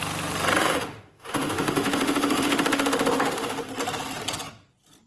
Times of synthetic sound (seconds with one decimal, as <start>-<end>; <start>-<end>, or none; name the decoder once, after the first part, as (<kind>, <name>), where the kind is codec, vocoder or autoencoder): 0.6-3.7 (autoencoder, DAC-VAE)